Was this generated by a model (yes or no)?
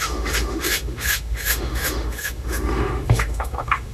yes